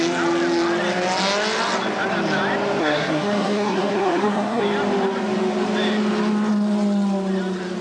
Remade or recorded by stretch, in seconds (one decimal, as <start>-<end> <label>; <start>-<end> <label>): 0.0-2.8 recorded; 2.8-4.6 remade; 4.6-7.8 recorded